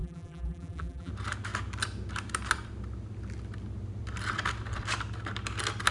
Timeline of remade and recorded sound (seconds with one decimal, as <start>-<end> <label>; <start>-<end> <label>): 0.0-1.1 remade; 1.1-5.9 recorded